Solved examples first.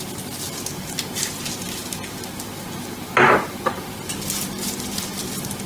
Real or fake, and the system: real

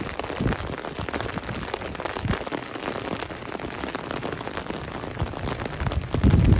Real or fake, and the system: real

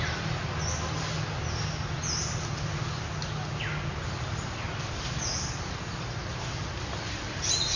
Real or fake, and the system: real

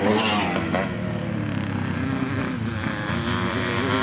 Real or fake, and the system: real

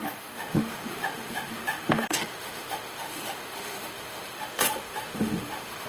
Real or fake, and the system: fake, autoencoder, DAC-VAE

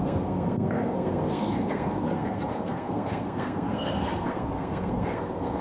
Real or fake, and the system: fake, codec, SNAC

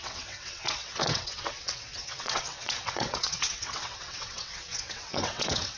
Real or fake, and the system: fake, vocoder, WaveNeXt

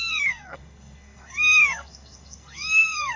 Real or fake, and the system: fake, codec, SNAC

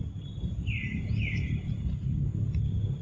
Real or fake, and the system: real